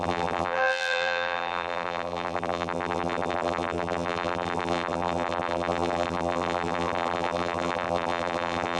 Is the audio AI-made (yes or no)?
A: yes